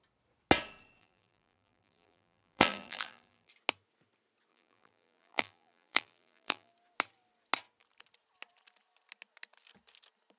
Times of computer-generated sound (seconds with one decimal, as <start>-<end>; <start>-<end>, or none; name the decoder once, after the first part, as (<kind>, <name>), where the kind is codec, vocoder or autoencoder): 1.0-3.5 (vocoder, BigVGAN v2); 4.5-6.7